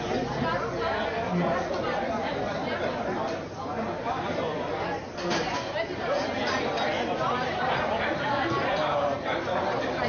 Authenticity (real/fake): real